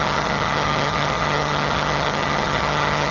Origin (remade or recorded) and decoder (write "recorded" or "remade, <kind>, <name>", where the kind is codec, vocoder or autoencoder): remade, vocoder, HiFi-GAN